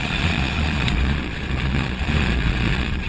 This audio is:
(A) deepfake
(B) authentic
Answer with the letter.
A